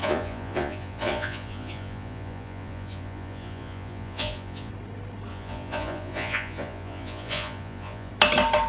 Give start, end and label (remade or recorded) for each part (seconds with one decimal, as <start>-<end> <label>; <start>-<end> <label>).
0.0-4.7 remade; 4.7-5.3 recorded; 5.3-8.1 remade; 8.1-8.7 recorded